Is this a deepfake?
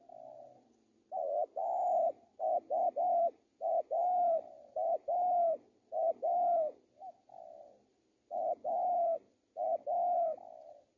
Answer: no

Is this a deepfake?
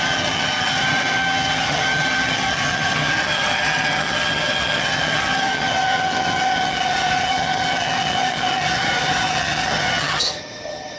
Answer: yes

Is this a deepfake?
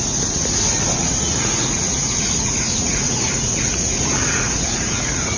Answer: yes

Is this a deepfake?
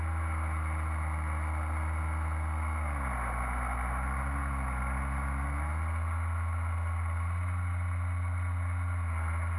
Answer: no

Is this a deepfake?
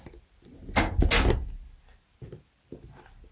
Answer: no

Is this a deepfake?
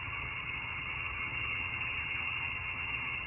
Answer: yes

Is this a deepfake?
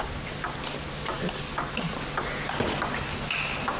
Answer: no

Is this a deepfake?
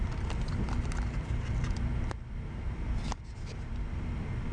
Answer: no